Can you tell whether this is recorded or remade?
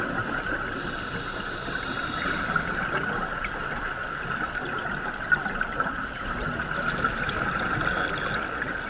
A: recorded